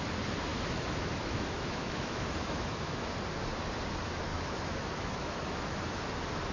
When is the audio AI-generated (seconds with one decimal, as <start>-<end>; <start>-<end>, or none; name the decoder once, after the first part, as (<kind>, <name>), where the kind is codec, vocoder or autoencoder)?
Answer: 0.5-3.1 (autoencoder, DAC-VAE); 4.3-5.9